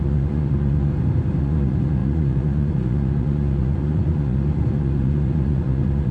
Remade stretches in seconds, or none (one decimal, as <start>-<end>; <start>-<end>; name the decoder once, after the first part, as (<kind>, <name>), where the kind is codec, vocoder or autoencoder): 0.0-0.9 (vocoder, Vocos); 1.4-6.1